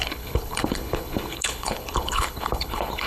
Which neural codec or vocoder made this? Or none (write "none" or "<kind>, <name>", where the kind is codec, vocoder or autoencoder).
codec, HILCodec